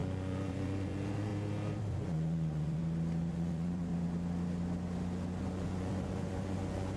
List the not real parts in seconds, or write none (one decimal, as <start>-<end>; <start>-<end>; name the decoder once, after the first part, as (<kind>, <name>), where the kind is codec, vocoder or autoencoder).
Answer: 0.0-1.3 (vocoder, Vocos); 1.9-2.8; 3.3-3.9; 5.4-7.0